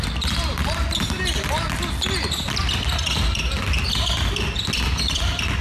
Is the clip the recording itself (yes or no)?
yes